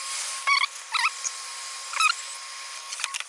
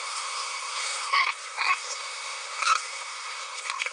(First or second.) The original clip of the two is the first